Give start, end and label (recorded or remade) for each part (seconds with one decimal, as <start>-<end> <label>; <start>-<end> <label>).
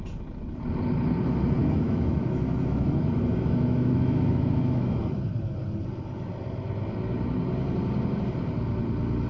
0.0-1.6 recorded; 1.6-5.0 remade; 5.0-9.3 recorded